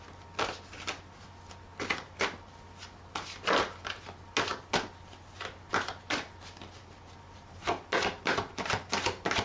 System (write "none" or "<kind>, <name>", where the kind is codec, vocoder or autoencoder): none